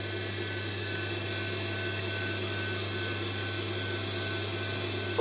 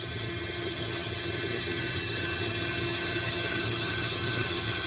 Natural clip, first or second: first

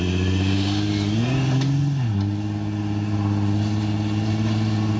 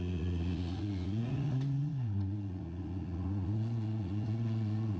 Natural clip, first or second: first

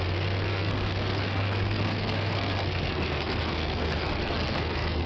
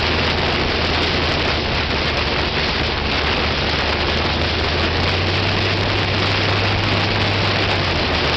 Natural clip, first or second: second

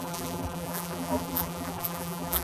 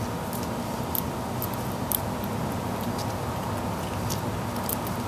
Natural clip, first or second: second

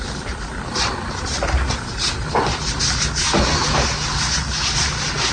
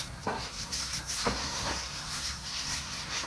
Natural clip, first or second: first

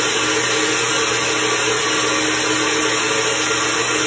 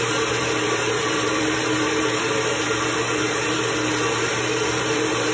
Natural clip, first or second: first